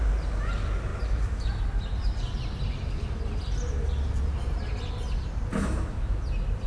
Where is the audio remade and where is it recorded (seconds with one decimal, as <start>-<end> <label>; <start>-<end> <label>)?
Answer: 0.0-5.5 recorded; 5.5-6.2 remade; 6.2-6.7 recorded